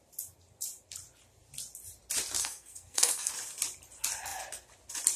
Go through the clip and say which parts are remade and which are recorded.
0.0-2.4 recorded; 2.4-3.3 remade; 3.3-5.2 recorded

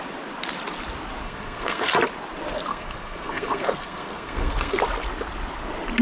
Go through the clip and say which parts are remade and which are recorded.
0.0-1.2 recorded; 1.2-1.9 remade; 1.9-2.7 recorded; 2.7-4.8 remade; 4.8-6.0 recorded